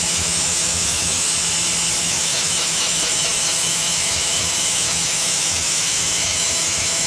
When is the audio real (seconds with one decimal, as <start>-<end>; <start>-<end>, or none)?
1.3-2.0